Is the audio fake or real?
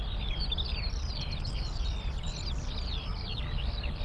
real